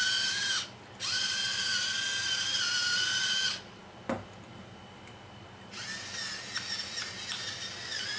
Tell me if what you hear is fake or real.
real